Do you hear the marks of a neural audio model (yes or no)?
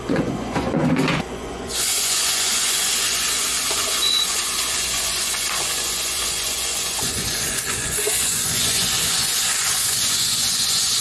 yes